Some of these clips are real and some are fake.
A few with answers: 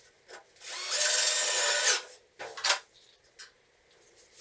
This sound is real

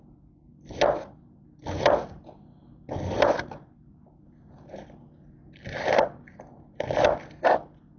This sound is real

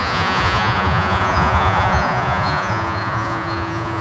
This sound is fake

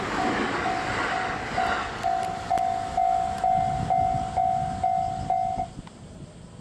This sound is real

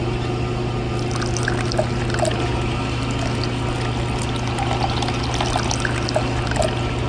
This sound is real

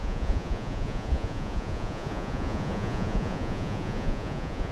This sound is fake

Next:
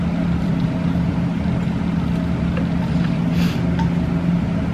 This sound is fake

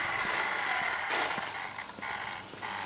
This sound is real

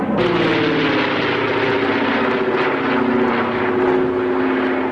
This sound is real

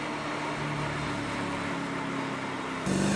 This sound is real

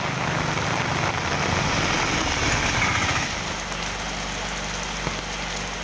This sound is real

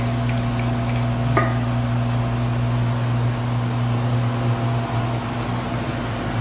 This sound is real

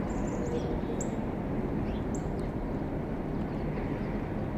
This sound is real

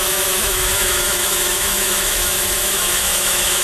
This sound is fake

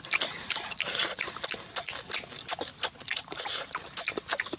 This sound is real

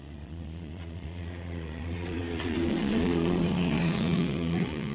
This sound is fake